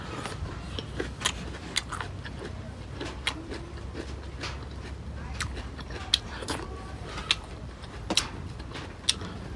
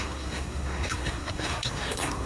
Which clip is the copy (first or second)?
second